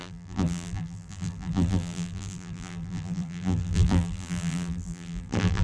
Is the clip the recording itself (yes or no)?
no